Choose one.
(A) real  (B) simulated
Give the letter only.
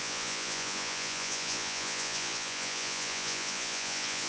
B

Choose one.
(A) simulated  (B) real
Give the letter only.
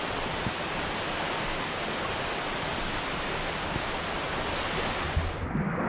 B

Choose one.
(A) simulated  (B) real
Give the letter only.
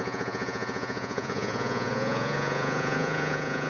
A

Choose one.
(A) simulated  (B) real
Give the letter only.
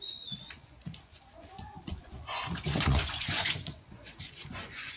A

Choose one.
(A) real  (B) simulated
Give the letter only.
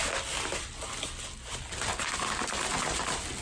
A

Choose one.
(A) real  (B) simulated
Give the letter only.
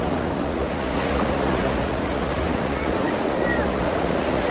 B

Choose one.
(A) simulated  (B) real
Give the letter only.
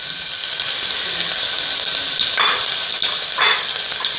B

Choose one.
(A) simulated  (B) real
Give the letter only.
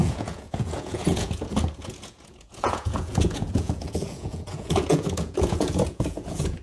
A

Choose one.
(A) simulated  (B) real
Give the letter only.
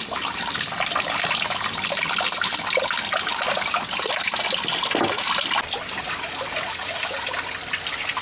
B